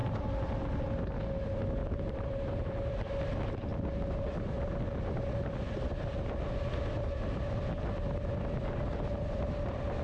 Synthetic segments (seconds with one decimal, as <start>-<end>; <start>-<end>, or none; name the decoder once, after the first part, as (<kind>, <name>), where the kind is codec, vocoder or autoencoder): 1.8-3.0 (vocoder, BigVGAN v2)

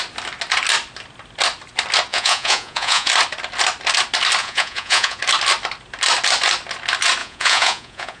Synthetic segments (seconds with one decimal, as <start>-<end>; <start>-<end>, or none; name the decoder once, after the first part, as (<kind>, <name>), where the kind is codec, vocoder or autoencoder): 2.1-3.1 (vocoder, Vocos); 4.4-5.2; 7.2-8.2

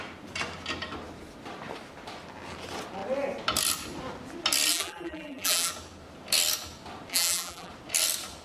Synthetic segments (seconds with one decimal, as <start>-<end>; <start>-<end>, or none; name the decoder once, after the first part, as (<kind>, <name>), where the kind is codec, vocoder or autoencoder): 4.7-5.7 (vocoder, BigVGAN v2); 7.1-7.7